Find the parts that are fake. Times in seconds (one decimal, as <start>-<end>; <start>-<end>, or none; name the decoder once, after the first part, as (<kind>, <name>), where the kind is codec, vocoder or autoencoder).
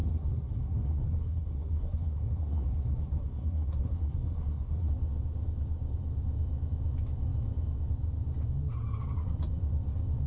0.0-4.9 (codec, SNAC)